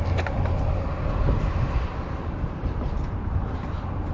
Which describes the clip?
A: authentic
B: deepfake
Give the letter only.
B